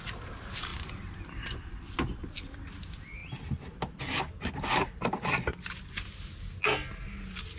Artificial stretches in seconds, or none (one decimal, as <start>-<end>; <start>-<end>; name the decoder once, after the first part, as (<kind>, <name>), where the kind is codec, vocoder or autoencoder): none